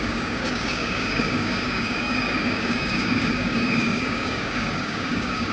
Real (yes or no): no